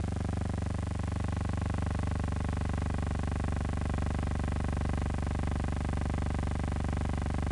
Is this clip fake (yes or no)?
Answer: no